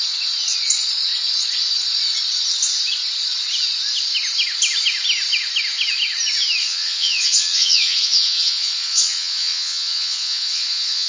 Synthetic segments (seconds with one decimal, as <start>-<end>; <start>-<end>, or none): 6.6-11.1